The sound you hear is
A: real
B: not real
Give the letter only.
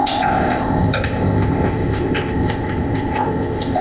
B